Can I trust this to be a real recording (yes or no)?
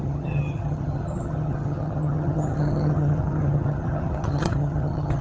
no